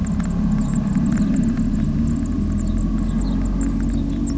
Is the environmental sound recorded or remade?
recorded